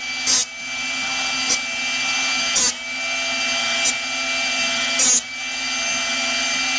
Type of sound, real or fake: real